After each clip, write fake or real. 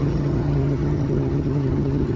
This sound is fake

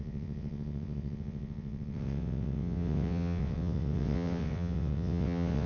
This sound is fake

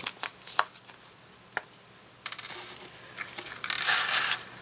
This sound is real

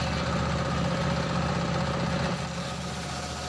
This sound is real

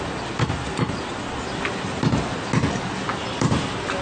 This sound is real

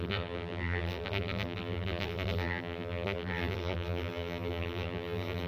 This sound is fake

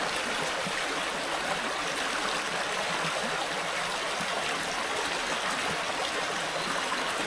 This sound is real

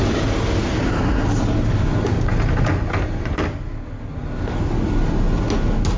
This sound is real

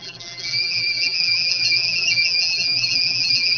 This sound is fake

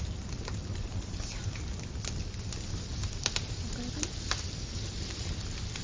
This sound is fake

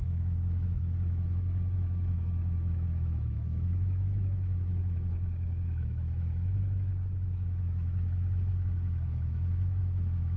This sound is fake